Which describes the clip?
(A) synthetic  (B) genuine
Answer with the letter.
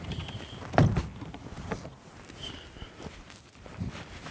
B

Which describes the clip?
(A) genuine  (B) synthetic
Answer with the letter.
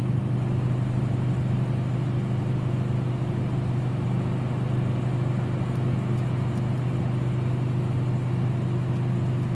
A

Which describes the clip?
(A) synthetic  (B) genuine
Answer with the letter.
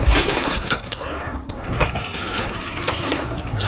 A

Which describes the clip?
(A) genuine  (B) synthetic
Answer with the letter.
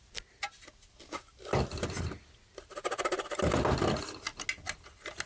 A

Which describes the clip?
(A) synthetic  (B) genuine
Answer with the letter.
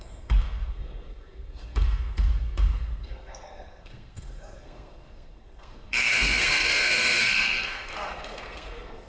A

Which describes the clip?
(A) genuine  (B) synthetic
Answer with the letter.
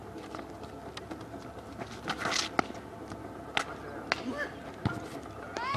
A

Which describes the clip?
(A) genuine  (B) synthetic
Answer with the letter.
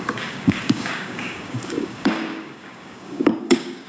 B